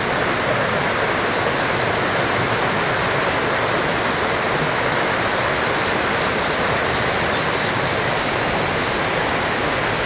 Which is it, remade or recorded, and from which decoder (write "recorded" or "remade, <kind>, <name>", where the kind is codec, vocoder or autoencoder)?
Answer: recorded